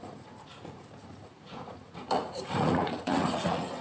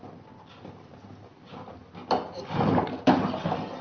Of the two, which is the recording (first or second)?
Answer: second